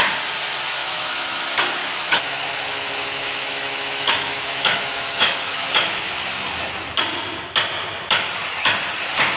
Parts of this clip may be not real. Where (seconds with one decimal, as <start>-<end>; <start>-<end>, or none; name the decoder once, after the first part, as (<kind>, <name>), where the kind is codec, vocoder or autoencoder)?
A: 0.8-1.4 (autoencoder, DAC-VAE); 1.8-6.1